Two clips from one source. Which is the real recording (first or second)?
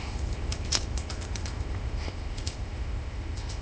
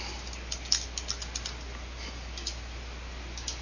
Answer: second